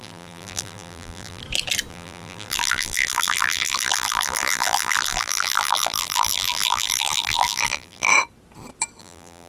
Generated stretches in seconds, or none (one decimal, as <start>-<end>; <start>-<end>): 0.0-1.4; 1.9-8.1; 9.0-9.5